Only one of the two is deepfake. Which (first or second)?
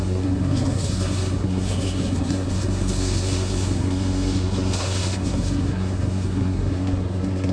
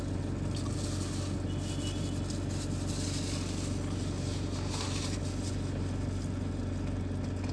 first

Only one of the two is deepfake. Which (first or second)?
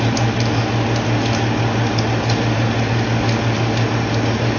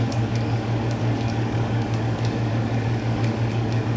second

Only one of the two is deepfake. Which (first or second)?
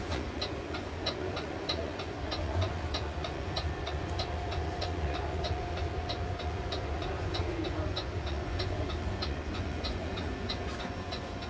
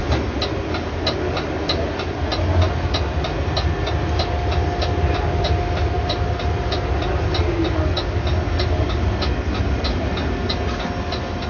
first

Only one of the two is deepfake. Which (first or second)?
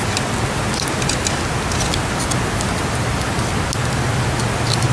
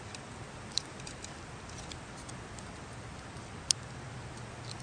second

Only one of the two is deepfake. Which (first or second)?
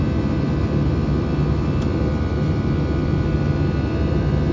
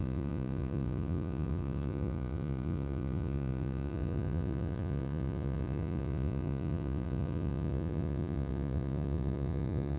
second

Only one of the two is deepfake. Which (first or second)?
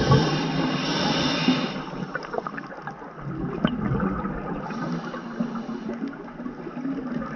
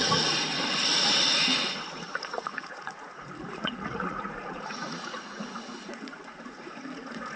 second